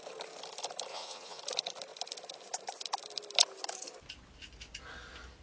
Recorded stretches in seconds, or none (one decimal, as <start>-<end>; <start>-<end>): 0.0-0.9; 1.4-5.4